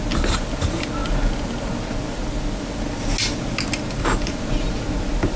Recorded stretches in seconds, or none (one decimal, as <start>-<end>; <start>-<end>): 0.0-5.4